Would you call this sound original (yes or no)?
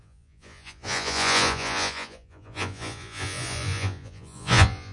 no